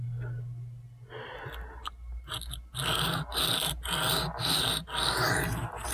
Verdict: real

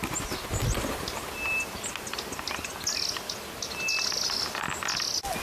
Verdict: real